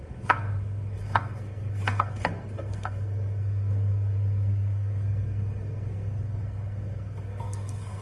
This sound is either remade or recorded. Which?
remade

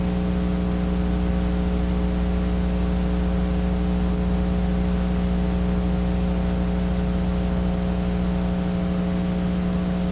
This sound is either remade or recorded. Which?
recorded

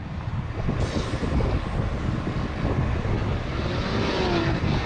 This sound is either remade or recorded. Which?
recorded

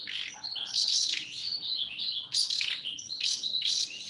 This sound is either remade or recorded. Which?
remade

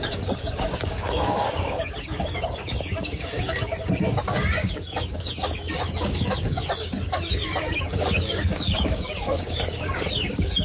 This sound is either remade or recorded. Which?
remade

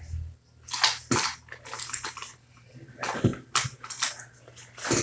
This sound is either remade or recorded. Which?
recorded